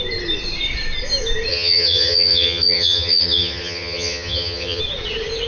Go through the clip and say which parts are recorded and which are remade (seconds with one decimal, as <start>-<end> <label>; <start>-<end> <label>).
0.0-1.5 recorded; 1.5-4.8 remade; 4.8-5.5 recorded